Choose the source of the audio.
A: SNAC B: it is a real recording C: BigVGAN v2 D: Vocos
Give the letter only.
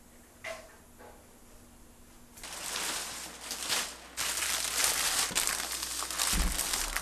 B